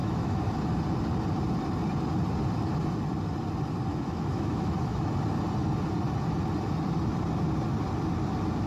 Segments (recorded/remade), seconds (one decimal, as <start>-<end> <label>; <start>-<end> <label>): 0.0-0.6 remade; 0.6-3.9 recorded; 3.9-5.1 remade; 5.1-8.7 recorded